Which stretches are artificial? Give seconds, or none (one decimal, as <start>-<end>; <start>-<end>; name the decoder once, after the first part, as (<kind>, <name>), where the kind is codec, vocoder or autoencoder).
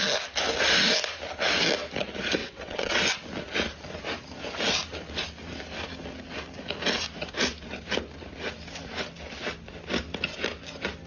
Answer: 2.4-3.0 (vocoder, WaveNeXt)